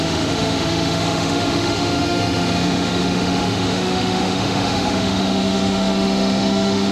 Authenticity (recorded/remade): remade